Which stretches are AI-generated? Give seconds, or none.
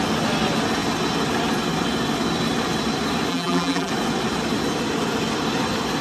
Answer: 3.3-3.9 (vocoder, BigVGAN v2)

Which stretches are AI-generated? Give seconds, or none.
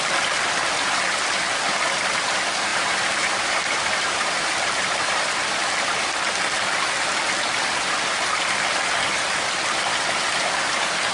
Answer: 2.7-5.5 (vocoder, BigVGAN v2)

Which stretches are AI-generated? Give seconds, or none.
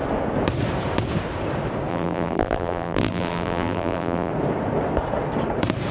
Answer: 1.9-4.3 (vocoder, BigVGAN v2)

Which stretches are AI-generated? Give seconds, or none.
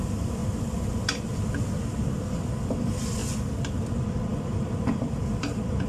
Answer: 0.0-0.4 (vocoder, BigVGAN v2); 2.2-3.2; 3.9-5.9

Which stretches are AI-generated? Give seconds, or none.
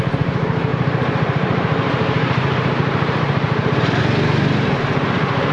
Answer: 0.7-4.0 (vocoder, BigVGAN v2)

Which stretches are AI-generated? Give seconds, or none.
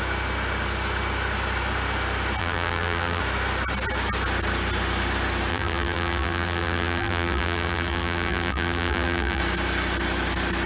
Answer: 2.4-3.2 (vocoder, BigVGAN v2); 5.5-9.4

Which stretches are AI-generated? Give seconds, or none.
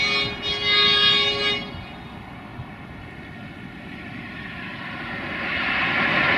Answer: 3.9-6.4 (vocoder, BigVGAN v2)